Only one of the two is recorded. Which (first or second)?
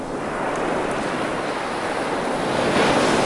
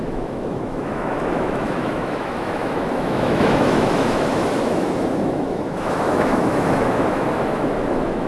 first